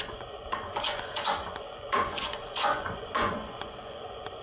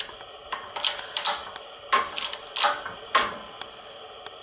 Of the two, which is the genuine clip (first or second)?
second